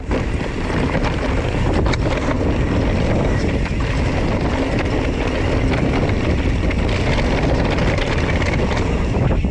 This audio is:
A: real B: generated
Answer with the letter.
A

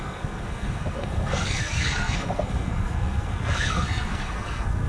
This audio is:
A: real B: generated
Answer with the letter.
B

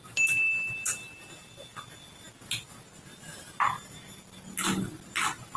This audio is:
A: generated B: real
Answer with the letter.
B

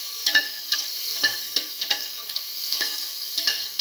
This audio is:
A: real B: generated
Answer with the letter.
B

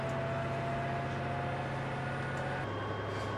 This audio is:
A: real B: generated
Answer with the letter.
A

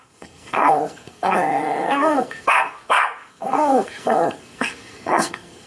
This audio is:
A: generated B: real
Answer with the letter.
A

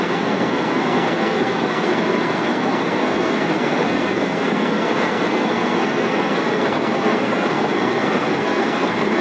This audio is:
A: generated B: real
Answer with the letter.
A